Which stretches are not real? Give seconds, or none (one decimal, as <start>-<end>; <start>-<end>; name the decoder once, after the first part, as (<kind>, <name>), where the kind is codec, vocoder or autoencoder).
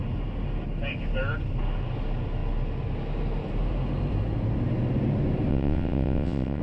5.5-6.6 (vocoder, WaveNeXt)